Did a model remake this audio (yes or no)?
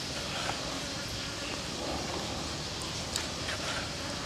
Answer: no